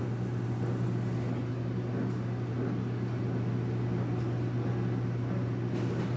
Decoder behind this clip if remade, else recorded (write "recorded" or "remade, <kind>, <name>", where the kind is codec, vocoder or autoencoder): recorded